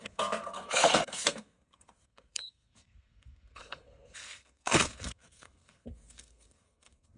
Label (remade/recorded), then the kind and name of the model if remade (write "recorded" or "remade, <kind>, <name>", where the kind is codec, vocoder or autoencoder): remade, codec, SNAC